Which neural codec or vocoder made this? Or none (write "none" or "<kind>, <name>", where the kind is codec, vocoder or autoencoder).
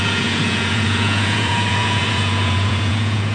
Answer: vocoder, Vocos